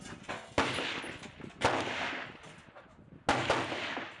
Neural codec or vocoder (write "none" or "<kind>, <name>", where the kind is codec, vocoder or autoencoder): none